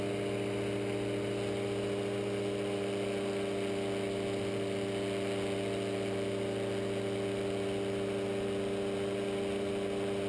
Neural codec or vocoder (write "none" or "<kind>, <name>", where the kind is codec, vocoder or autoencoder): none